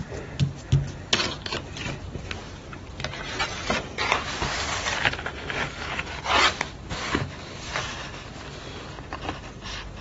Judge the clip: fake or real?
real